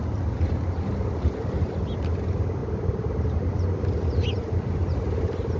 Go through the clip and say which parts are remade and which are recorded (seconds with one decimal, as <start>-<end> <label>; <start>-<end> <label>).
0.0-5.6 recorded